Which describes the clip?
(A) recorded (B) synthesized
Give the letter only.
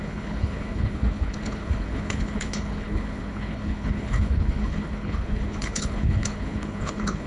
B